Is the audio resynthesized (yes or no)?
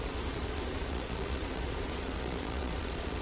yes